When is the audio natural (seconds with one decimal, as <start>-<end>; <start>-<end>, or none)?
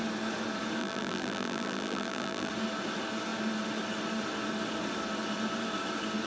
0.0-0.8; 2.5-6.3